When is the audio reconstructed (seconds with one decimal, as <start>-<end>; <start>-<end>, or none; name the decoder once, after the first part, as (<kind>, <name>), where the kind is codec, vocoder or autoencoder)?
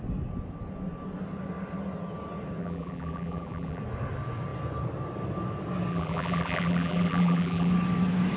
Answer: 2.6-3.8 (vocoder, BigVGAN v2); 5.9-7.7